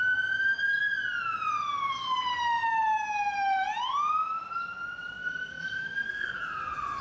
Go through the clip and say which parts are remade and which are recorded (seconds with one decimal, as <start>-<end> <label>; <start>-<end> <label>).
0.0-5.2 recorded; 5.2-6.4 remade; 6.4-7.0 recorded